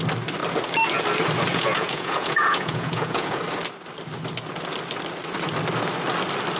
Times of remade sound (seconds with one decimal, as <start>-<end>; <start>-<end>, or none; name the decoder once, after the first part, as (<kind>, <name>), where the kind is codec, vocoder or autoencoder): 1.5-3.4 (vocoder, Vocos)